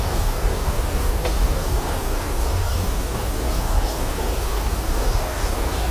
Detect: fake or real fake